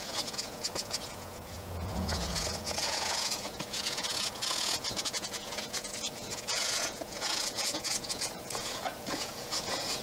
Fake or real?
fake